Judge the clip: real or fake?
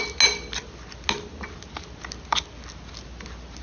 real